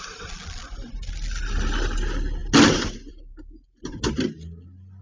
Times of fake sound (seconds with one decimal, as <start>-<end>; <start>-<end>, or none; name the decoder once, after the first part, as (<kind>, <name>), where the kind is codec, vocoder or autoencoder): none